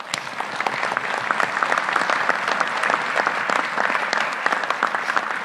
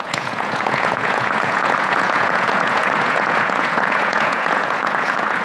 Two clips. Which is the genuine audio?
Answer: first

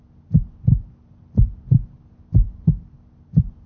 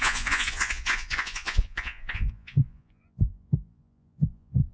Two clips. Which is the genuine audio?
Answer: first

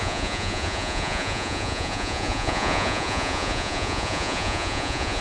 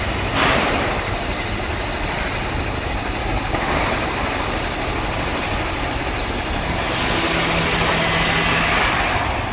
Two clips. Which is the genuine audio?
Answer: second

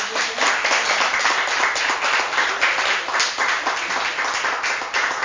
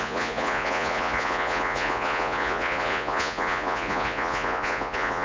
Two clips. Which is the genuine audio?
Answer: first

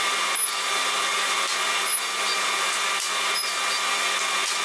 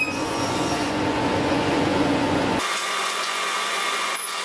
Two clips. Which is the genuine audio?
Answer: first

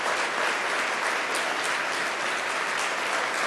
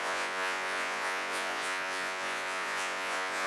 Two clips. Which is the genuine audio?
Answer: first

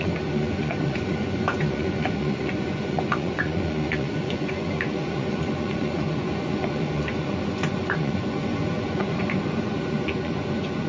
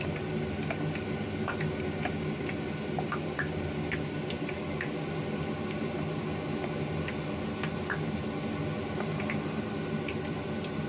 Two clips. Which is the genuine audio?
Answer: second